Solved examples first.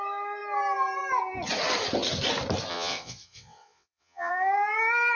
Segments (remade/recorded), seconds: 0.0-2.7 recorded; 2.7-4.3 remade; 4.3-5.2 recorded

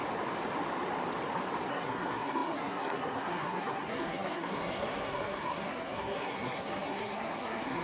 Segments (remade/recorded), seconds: 0.0-1.7 recorded; 1.7-7.8 remade

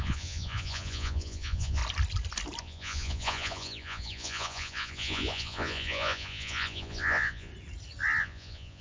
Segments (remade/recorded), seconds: 0.0-1.8 remade; 1.8-2.6 recorded; 2.6-7.5 remade; 7.5-8.2 recorded; 8.2-8.8 remade

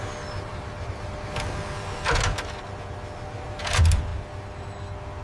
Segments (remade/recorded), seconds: 0.0-5.2 recorded